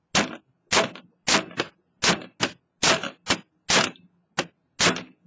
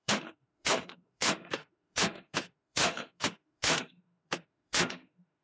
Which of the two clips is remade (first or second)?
second